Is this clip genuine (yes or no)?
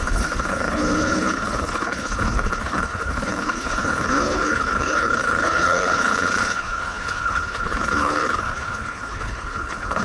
no